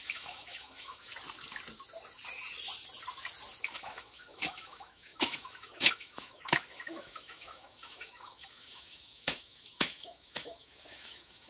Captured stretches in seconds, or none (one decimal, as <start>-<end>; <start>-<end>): 1.1-3.6